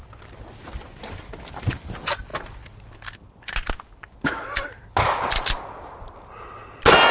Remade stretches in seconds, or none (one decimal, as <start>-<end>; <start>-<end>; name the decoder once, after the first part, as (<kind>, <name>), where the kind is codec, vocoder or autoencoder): none